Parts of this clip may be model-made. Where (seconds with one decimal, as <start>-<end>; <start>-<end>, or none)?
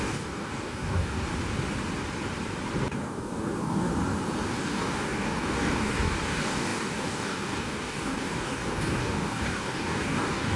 0.0-1.3; 2.9-3.9; 4.6-10.6